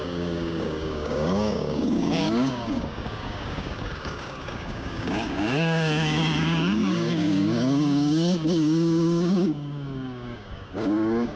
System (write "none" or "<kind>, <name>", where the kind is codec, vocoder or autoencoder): codec, DAC